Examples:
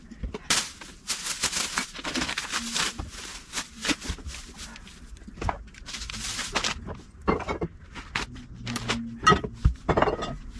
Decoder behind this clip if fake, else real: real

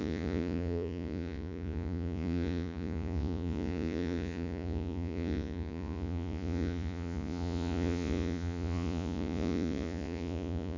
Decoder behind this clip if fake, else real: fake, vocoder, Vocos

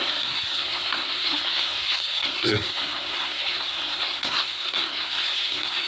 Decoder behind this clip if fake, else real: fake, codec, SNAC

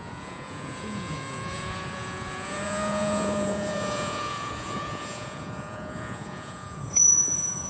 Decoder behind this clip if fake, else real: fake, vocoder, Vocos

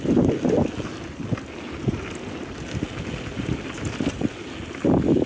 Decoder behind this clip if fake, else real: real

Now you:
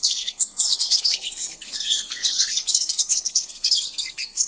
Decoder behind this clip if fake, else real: fake, codec, SNAC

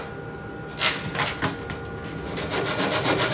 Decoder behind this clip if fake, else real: real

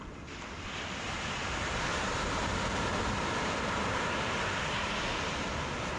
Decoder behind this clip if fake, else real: real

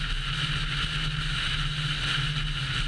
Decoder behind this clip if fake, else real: real